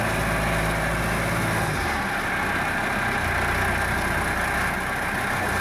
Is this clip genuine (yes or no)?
yes